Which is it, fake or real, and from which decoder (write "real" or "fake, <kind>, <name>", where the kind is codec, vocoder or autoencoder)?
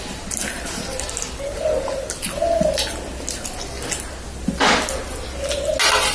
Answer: real